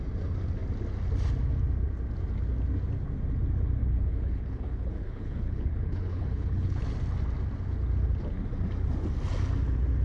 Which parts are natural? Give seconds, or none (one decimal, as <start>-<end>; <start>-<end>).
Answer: 0.0-3.8; 6.8-10.0